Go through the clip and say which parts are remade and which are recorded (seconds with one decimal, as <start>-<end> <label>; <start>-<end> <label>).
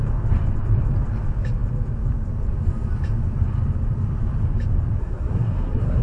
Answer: 0.0-5.0 recorded; 5.0-6.0 remade